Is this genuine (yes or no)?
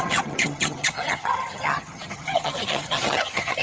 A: no